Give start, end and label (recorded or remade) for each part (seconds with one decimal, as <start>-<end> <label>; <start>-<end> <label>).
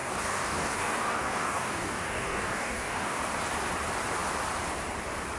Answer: 0.0-3.2 remade; 3.2-5.4 recorded